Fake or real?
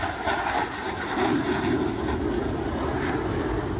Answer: real